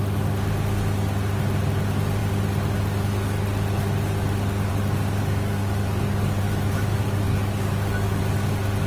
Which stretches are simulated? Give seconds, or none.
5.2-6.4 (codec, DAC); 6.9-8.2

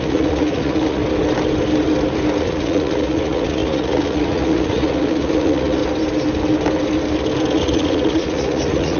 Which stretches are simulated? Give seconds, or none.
0.0-1.0 (vocoder, Vocos); 2.4-5.8; 7.5-9.0

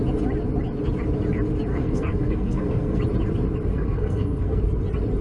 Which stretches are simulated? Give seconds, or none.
1.7-3.0 (codec, SNAC); 3.7-4.6

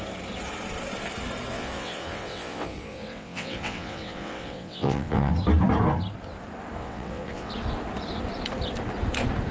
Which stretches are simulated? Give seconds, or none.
1.5-5.3 (vocoder, WaveNeXt); 6.8-7.5

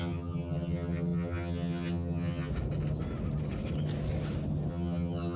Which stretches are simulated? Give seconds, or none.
0.0-2.5 (vocoder, HiFi-GAN); 4.7-5.4

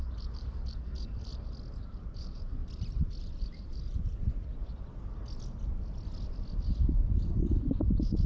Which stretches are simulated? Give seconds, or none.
0.0-1.3 (vocoder, BigVGAN v2); 1.8-2.6; 3.2-4.5; 7.8-8.3